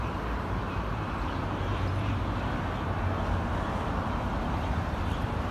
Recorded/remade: remade